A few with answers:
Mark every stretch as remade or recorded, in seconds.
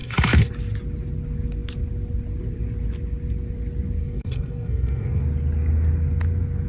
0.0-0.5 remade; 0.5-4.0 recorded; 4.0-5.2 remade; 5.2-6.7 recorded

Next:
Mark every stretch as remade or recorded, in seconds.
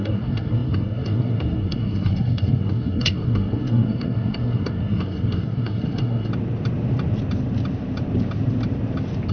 0.0-6.3 remade; 6.3-9.3 recorded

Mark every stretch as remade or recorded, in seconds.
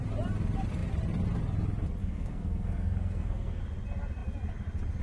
0.0-2.0 recorded; 2.0-3.6 remade; 3.6-5.0 recorded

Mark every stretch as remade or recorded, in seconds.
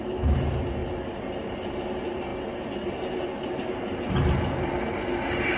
0.0-5.6 recorded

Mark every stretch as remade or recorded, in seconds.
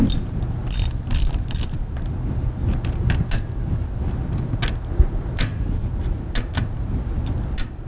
0.0-7.9 recorded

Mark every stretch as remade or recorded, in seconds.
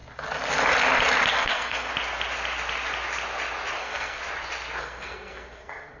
0.0-1.3 recorded; 1.3-1.9 remade; 1.9-3.8 recorded; 3.8-4.2 remade; 4.2-4.8 recorded; 4.8-6.0 remade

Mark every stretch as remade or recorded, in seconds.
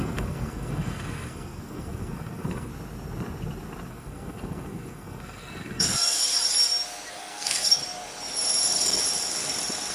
0.0-2.7 remade; 2.7-3.9 recorded; 3.9-6.2 remade; 6.2-7.1 recorded; 7.1-7.8 remade; 7.8-9.9 recorded